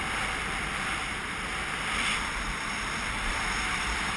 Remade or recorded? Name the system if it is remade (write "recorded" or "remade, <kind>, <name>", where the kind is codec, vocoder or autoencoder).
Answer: remade, vocoder, BigVGAN v2